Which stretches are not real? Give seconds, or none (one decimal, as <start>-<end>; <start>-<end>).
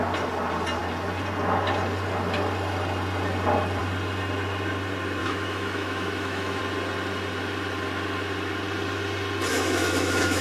5.2-6.6; 9.5-10.4